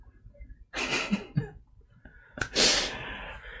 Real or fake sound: real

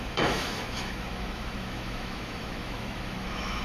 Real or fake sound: fake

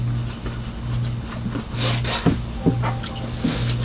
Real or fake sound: real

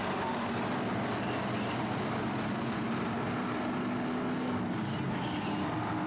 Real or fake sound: real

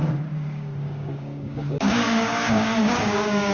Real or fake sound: fake